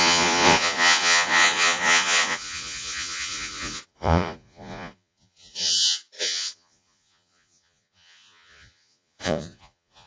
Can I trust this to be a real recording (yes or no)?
no